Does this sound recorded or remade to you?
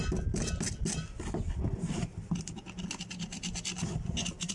recorded